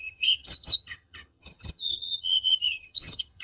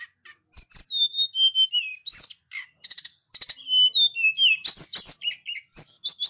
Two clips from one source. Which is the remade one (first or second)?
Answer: first